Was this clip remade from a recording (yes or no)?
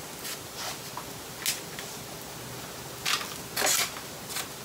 no